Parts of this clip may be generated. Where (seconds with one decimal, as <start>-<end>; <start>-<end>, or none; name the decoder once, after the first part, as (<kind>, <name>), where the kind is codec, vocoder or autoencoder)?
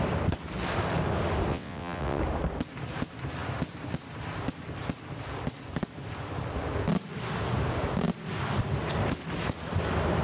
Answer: 1.5-2.2 (vocoder, WaveNeXt)